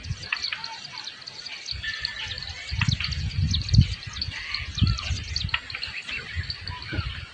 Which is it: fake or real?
real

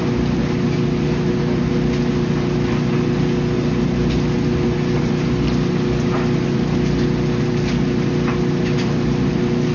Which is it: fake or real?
real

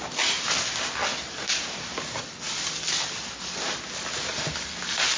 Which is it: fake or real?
real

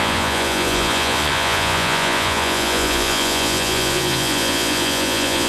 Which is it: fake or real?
fake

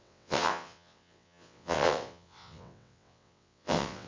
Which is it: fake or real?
fake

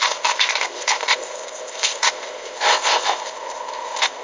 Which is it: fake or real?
fake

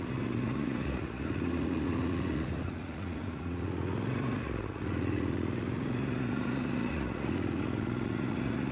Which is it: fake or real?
fake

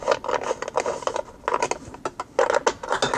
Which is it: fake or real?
real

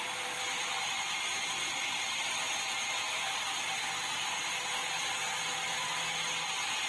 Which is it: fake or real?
real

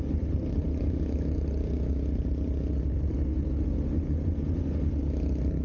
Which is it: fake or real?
real